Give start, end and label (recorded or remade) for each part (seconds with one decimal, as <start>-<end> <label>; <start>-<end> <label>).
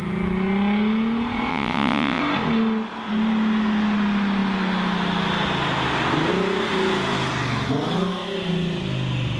0.0-1.5 recorded; 1.5-2.2 remade; 2.2-9.4 recorded